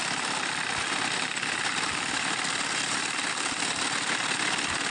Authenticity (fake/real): real